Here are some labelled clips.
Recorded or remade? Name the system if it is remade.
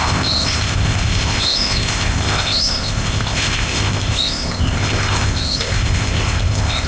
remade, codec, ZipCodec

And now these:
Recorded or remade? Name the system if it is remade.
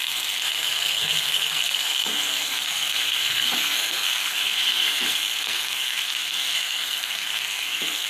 remade, codec, SNAC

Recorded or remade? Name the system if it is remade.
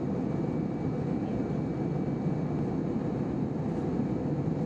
recorded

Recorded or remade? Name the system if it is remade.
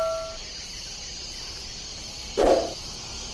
recorded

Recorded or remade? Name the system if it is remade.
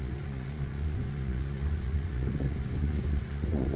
remade, vocoder, Vocos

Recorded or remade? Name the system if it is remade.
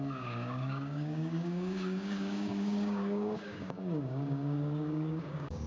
remade, codec, DAC